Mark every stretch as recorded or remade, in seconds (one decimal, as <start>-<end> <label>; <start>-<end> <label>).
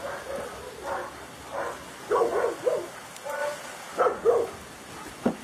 0.0-5.4 recorded